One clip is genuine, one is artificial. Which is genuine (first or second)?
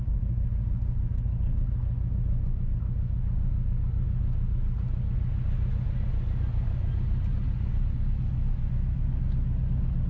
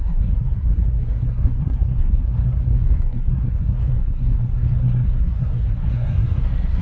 first